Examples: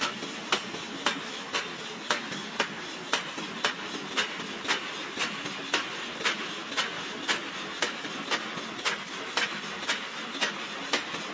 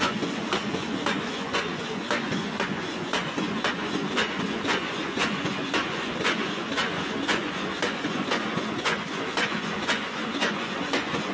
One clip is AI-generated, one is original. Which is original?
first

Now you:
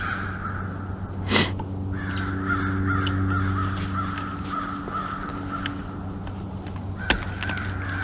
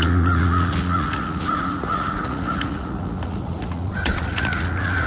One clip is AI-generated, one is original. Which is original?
first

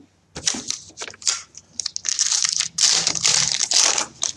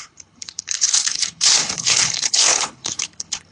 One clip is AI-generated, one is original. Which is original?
first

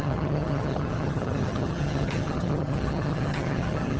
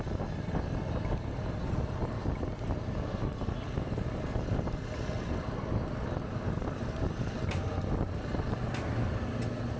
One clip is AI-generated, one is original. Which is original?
second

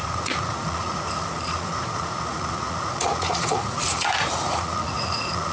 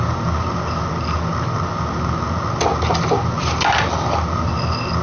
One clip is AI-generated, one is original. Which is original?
second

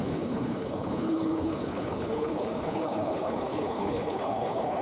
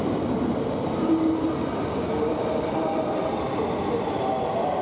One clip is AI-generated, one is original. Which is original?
second